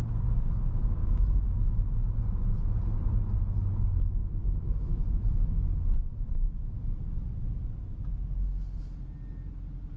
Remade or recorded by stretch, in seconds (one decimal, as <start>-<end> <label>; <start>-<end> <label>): 0.0-0.8 recorded; 0.8-1.5 remade; 1.5-4.2 recorded; 4.2-5.0 remade; 5.0-6.1 recorded; 6.1-6.7 remade; 6.7-10.0 recorded